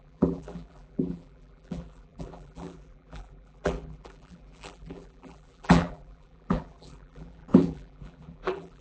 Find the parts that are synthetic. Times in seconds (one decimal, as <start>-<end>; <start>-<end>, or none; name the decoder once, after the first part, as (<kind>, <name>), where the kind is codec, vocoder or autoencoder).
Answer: 0.0-8.8 (vocoder, BigVGAN v2)